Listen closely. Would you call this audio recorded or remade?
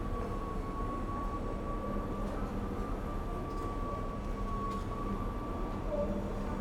recorded